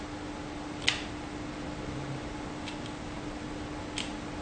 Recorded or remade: recorded